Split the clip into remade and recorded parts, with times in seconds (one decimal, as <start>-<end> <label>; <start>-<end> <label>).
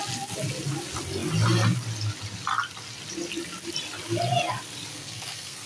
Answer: 0.0-4.9 recorded; 4.9-5.7 remade